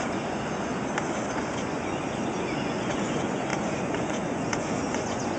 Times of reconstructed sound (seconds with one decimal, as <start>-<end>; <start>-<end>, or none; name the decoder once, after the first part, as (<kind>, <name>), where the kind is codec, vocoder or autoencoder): 0.0-0.7 (vocoder, Vocos); 1.3-5.4